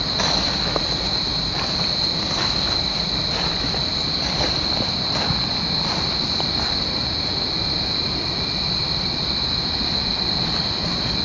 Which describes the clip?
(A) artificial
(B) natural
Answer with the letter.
A